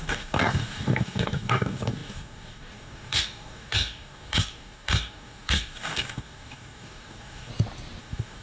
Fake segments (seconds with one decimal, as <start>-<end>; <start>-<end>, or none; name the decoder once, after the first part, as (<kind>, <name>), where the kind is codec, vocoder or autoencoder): 0.0-7.5 (codec, DAC); 8.0-8.4